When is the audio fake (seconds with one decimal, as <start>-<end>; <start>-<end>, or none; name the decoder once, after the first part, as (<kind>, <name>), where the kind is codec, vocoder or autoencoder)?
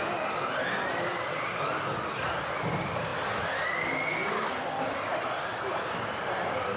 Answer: none